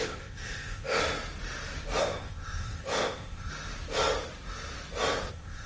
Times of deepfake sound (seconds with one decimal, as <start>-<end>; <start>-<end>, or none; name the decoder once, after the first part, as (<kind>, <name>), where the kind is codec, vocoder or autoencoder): 0.0-1.0 (codec, ZipCodec); 2.0-3.5; 5.3-5.7